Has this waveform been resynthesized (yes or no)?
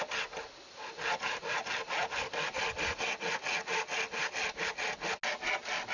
no